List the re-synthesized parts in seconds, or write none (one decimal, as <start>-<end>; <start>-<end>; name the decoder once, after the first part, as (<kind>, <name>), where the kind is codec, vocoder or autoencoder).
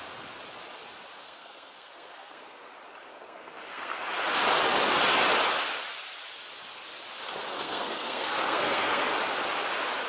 1.2-2.7 (codec, SNAC); 3.1-4.0; 7.4-9.0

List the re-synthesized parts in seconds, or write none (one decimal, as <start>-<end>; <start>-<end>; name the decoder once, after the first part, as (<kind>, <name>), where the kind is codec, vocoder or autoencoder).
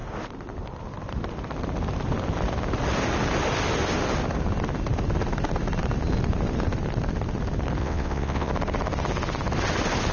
7.8-8.5 (vocoder, WaveNeXt)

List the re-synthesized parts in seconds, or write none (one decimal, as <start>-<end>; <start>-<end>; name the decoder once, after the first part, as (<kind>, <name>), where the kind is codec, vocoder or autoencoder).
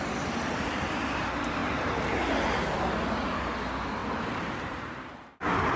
1.6-2.9 (vocoder, BigVGAN v2); 4.0-5.1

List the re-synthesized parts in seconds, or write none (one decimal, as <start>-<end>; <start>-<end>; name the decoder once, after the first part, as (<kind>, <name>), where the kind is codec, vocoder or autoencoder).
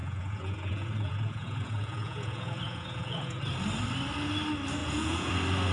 0.0-3.4 (vocoder, Vocos); 4.8-5.3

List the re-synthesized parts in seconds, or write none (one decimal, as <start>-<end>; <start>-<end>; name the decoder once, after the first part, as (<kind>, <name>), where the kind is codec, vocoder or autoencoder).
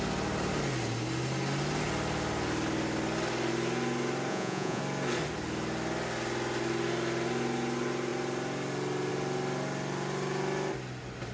4.3-4.8 (vocoder, Vocos)